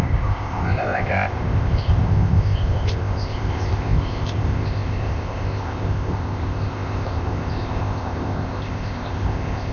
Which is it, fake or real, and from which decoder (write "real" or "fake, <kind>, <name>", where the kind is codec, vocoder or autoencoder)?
fake, codec, ZipCodec